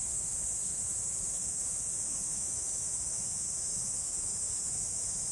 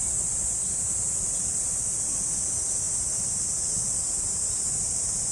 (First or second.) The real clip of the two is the second